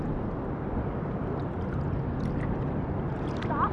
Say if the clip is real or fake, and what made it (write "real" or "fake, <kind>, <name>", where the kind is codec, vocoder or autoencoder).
real